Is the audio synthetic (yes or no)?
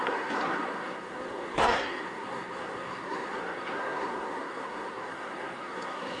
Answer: yes